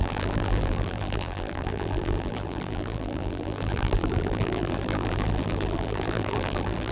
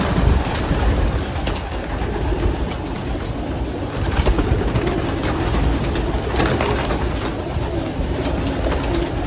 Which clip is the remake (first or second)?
first